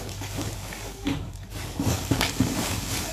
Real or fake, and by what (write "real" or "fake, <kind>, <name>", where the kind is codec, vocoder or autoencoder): fake, codec, DAC